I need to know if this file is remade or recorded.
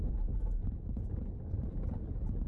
recorded